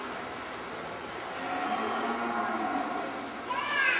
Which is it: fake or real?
real